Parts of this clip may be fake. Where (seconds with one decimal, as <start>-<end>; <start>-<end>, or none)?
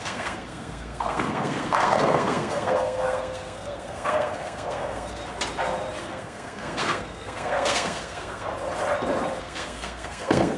0.0-5.2; 6.0-8.5; 9.4-10.6